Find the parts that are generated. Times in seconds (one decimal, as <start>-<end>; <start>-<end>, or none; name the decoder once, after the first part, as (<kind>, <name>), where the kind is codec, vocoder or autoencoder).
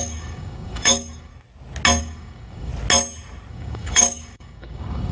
0.0-1.3 (codec, DAC); 2.0-2.7; 3.5-5.1